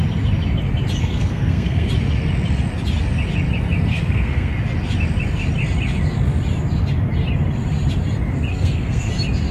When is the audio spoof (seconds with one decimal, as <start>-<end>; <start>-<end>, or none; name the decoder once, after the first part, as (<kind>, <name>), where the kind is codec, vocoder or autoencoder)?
1.0-1.9 (codec, SNAC); 3.9-4.5; 8.5-9.1